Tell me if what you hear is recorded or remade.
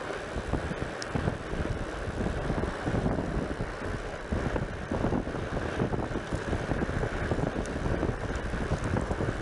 recorded